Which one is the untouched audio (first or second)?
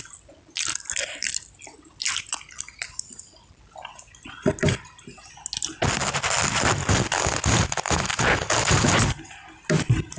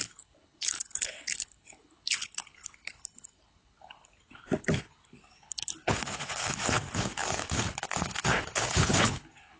first